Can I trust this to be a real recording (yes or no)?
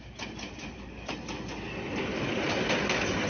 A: yes